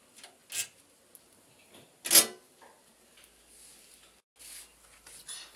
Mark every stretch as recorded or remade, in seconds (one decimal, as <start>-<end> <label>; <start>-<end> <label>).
0.0-5.6 recorded